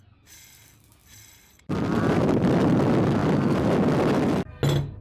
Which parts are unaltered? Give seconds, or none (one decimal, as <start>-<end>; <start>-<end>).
0.0-1.0; 2.0-5.0